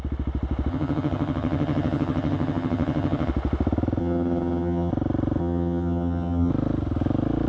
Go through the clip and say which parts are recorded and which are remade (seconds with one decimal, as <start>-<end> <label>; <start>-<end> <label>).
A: 0.0-0.7 recorded; 0.7-3.3 remade; 3.3-4.0 recorded; 4.0-4.9 remade; 4.9-5.4 recorded; 5.4-6.5 remade; 6.5-7.5 recorded